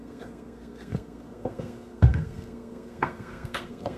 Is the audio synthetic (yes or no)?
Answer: yes